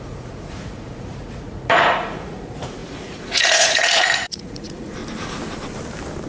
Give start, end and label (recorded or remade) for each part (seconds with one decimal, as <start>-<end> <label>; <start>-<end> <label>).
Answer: 0.0-5.0 remade; 5.0-6.3 recorded